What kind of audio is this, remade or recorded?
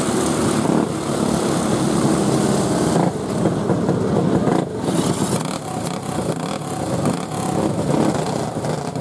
recorded